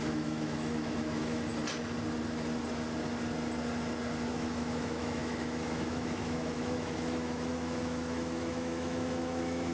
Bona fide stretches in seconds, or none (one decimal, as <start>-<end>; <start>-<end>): 1.5-4.3